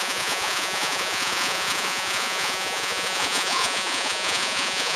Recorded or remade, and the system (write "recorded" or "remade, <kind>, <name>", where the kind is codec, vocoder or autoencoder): remade, vocoder, Vocos